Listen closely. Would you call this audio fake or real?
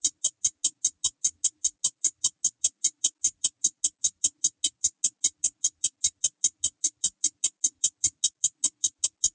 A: real